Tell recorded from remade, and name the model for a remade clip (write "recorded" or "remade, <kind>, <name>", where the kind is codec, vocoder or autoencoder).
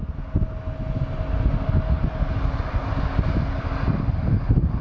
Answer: recorded